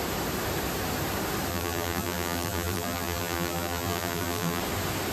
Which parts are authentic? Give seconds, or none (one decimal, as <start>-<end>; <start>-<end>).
0.0-1.5; 4.6-5.1

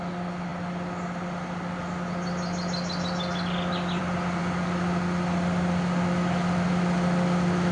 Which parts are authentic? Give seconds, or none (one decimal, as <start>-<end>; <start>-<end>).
0.0-7.7

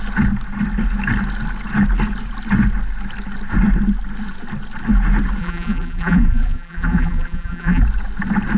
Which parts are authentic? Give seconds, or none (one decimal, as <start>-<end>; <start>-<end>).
0.0-5.4; 7.8-8.6

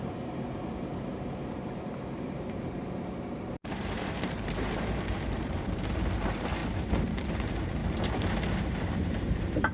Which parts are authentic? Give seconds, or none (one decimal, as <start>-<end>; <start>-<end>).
6.6-7.3; 7.8-8.6

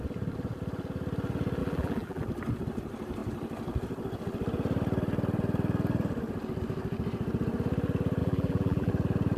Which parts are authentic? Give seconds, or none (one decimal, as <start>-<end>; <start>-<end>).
0.0-1.6; 2.2-8.2; 8.9-9.4

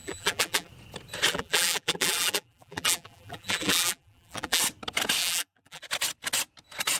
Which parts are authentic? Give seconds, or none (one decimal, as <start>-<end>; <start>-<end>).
0.7-1.3; 4.6-5.2; 5.8-7.0